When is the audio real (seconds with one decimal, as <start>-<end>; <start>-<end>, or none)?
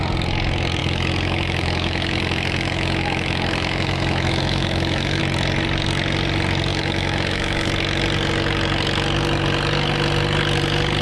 0.0-0.8; 5.2-6.7; 7.7-11.0